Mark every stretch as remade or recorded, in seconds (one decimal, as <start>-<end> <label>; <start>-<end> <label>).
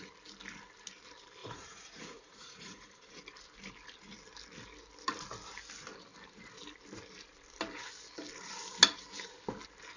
0.0-1.4 recorded; 1.4-3.2 remade; 3.2-10.0 recorded